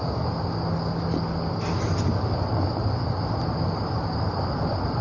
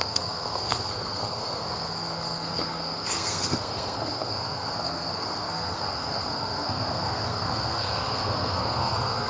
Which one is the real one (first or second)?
first